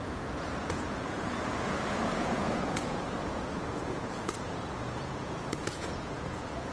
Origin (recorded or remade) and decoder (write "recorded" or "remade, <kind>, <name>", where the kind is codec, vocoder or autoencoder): remade, vocoder, Vocos